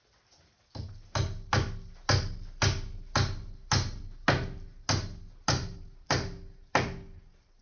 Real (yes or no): yes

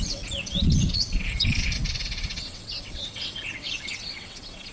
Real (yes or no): no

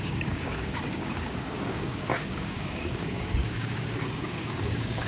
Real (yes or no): no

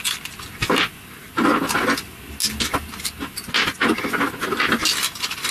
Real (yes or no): yes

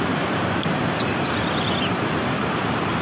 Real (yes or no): yes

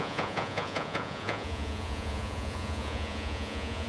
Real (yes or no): no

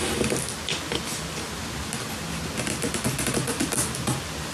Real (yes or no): yes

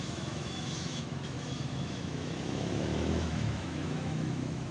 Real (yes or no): no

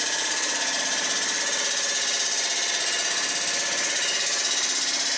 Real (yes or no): yes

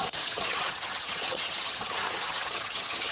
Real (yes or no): no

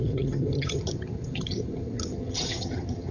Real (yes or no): no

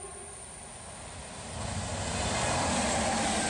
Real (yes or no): yes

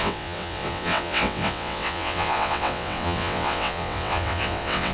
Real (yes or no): no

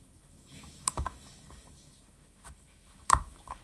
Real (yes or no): no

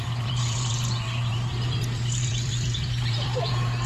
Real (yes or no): no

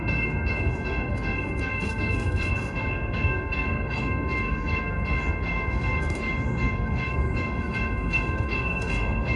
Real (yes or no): no